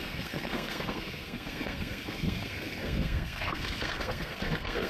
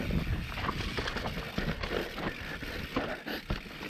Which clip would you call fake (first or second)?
first